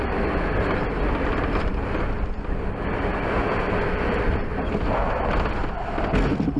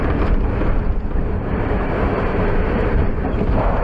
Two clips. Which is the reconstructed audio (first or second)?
second